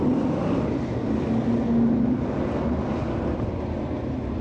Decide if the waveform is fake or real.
real